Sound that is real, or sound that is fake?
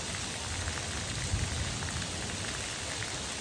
real